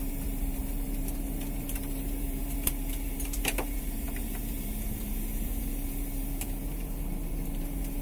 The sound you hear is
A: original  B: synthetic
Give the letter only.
B